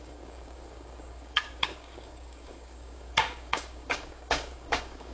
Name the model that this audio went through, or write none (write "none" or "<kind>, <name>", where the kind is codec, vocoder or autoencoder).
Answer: codec, DAC